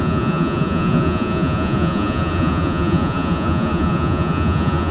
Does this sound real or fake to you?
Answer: fake